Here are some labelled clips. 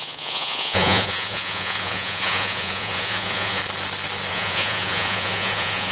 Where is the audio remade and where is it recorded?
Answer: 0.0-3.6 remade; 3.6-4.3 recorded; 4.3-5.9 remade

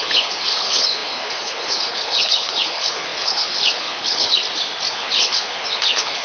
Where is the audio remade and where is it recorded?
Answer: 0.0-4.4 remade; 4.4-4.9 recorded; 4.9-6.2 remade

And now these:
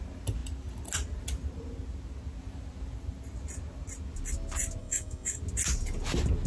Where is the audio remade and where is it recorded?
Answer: 0.0-4.8 recorded; 4.8-5.4 remade; 5.4-6.5 recorded

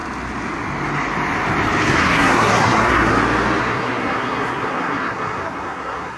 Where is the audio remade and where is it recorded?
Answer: 0.0-1.9 recorded; 1.9-3.1 remade; 3.1-3.6 recorded; 3.6-6.2 remade

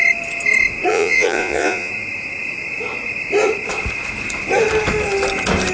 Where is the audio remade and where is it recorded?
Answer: 0.0-0.9 recorded; 0.9-1.9 remade; 1.9-5.7 recorded

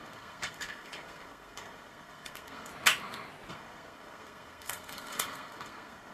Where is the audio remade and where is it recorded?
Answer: 0.0-2.7 remade; 2.7-3.5 recorded; 3.5-6.1 remade

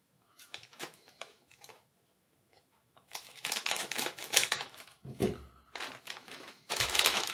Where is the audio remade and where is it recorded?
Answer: 0.0-5.2 remade; 5.2-6.0 recorded; 6.0-7.3 remade

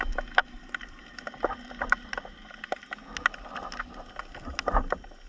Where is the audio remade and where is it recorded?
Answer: 0.0-0.4 recorded; 0.4-2.9 remade; 2.9-5.3 recorded